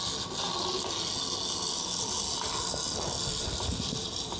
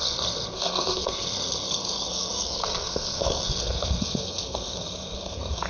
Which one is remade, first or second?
second